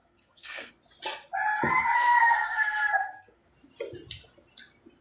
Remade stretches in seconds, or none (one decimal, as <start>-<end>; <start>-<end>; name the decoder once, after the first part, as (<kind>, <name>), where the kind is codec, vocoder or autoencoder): 0.0-0.7 (codec, SNAC); 1.7-3.4